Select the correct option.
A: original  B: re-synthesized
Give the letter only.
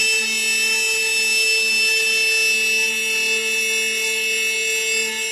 A